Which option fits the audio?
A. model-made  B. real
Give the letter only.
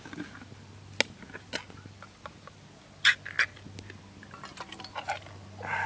B